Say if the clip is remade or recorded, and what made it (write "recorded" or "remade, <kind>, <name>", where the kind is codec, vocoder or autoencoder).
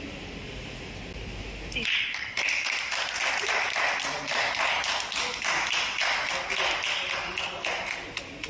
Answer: recorded